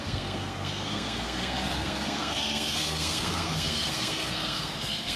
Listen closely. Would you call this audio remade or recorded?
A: remade